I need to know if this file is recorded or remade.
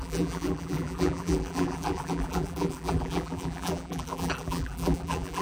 remade